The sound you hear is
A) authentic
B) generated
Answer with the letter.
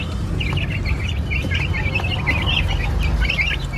A